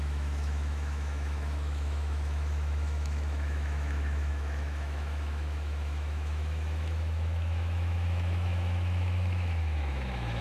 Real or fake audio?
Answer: fake